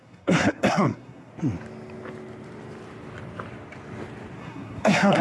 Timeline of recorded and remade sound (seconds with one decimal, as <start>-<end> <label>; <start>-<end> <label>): 0.0-1.3 remade; 1.3-4.4 recorded; 4.4-5.2 remade